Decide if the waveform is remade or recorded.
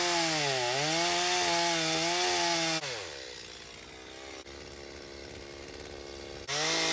recorded